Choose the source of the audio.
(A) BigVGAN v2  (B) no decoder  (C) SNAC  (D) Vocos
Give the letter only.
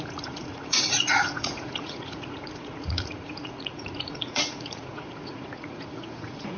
D